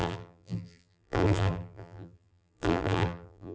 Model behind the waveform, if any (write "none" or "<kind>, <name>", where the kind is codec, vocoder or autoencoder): vocoder, BigVGAN v2